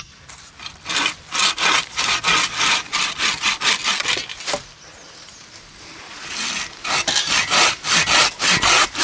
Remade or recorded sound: recorded